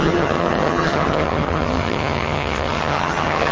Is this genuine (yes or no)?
no